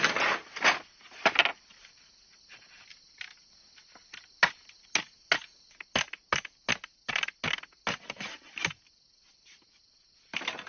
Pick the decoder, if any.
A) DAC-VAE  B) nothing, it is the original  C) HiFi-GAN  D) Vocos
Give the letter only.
B